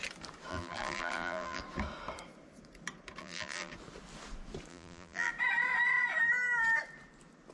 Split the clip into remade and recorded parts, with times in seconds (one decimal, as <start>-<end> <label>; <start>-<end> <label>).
0.0-0.5 recorded; 0.5-1.6 remade; 1.6-3.2 recorded; 3.2-3.7 remade; 3.7-4.7 recorded; 4.7-5.3 remade; 5.3-7.5 recorded